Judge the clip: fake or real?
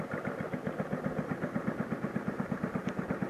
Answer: real